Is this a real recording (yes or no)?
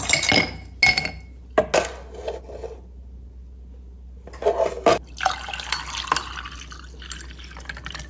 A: yes